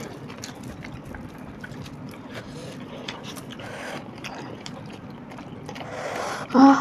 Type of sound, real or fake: real